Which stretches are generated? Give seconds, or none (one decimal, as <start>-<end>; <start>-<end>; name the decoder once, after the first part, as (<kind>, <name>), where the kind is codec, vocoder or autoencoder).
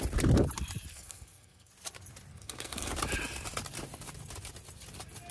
0.9-1.7 (codec, SNAC); 2.3-2.9